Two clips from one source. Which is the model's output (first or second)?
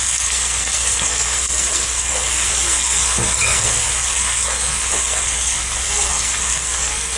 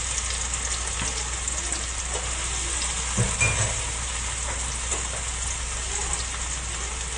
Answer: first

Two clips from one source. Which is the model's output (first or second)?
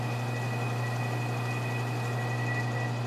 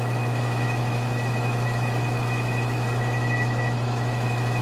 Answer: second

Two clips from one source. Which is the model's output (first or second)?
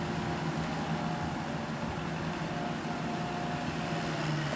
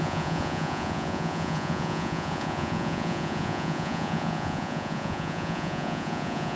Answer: second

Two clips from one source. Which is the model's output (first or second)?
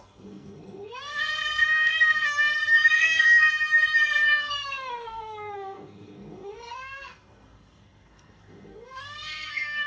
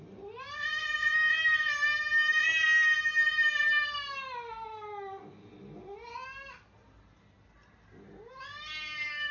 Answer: first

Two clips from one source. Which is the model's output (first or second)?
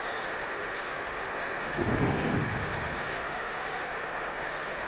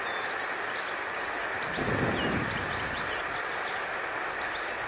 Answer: first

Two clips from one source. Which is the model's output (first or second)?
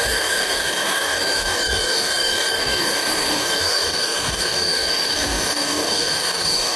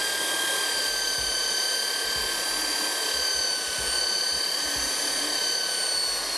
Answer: first